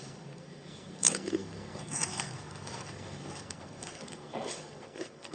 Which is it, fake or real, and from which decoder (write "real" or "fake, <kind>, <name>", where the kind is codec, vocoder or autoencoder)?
fake, codec, SNAC